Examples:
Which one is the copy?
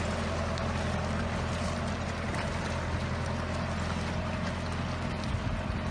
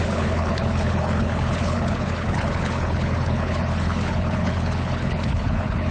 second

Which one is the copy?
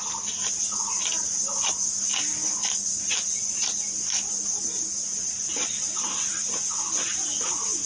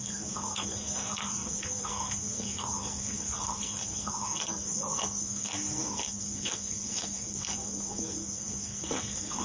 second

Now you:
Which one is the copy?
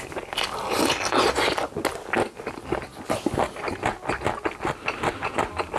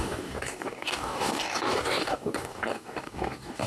second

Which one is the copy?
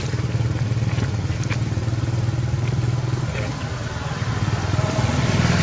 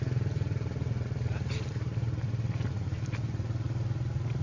second